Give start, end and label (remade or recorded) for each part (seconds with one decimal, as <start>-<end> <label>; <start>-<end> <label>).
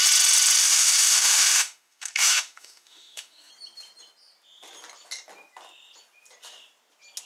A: 0.0-0.6 recorded; 0.6-3.5 remade; 3.5-7.3 recorded